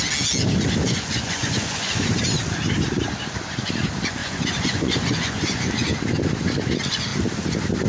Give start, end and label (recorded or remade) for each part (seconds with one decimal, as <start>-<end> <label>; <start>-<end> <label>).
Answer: 0.0-0.8 recorded; 0.8-2.1 remade; 2.1-4.2 recorded; 4.2-5.7 remade; 5.7-7.9 recorded